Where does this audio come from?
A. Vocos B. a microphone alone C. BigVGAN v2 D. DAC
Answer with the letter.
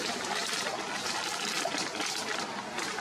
B